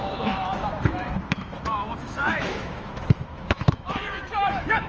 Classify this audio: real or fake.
fake